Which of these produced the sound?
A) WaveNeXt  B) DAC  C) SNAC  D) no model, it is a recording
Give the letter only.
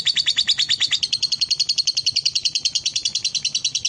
D